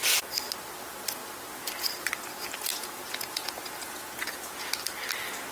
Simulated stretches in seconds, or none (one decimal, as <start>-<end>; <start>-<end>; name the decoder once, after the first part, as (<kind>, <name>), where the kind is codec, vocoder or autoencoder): 2.7-4.7 (vocoder, Vocos)

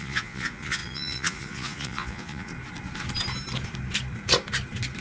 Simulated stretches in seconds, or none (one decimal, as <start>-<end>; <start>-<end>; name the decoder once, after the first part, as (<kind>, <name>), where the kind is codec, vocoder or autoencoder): 0.0-2.5 (vocoder, Vocos)

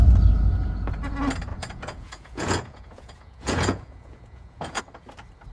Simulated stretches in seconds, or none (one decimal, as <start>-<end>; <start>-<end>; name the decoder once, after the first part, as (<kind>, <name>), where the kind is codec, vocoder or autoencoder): 1.5-4.8 (vocoder, Vocos)

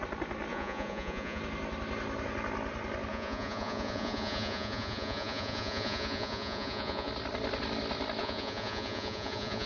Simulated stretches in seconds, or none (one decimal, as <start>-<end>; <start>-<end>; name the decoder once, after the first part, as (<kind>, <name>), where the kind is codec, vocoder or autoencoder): 0.5-1.4 (vocoder, Vocos); 3.1-7.1; 8.2-9.7

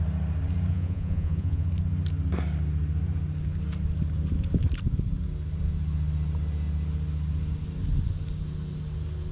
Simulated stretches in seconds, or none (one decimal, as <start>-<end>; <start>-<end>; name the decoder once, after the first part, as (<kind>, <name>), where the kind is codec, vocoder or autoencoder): 0.7-1.7 (vocoder, Vocos)

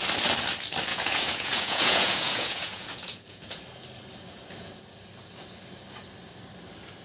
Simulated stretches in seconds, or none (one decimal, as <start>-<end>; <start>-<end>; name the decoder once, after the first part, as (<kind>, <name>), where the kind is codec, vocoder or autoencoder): 0.9-3.6 (vocoder, Vocos)

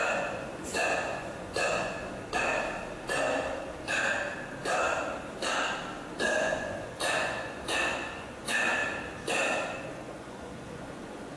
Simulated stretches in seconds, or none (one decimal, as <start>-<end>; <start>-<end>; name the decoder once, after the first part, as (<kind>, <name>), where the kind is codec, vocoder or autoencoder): 0.0-2.5 (vocoder, Vocos); 6.4-8.8; 9.7-11.4

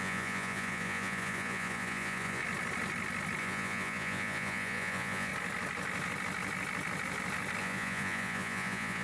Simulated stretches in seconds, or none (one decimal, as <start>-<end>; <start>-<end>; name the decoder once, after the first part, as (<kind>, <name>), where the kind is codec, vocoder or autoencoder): 0.0-2.4 (vocoder, Vocos); 3.4-5.3; 7.6-9.0